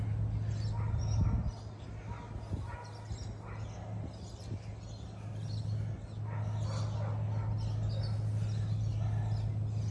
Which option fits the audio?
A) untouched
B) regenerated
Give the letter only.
A